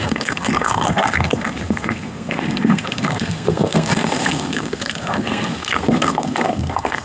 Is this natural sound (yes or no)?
no